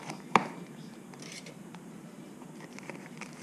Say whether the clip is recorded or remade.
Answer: remade